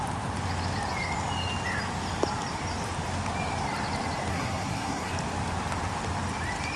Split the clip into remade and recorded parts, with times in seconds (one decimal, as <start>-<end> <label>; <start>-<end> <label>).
0.0-4.3 recorded; 4.3-5.1 remade; 5.1-6.8 recorded